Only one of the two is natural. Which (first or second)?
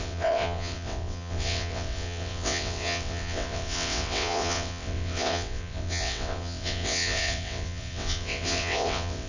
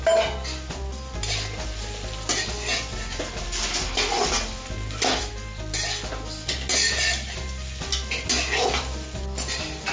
second